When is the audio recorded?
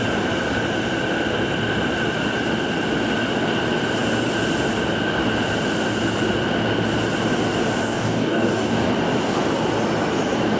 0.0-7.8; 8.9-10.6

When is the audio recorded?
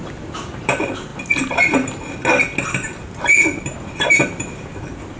1.1-4.2